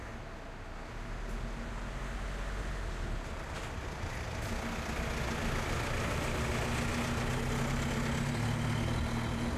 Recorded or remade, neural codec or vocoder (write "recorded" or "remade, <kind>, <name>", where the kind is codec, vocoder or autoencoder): recorded